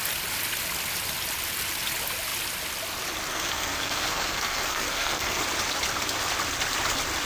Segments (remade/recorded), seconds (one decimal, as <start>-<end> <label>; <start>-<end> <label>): 0.0-3.3 recorded; 3.3-5.4 remade; 5.4-7.2 recorded